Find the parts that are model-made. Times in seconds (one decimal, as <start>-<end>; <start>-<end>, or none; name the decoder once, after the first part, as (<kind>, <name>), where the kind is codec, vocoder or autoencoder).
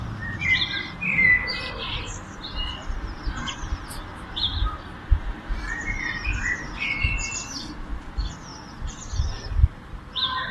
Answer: none